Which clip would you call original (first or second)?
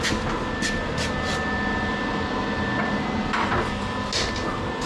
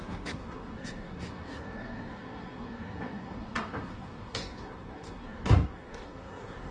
first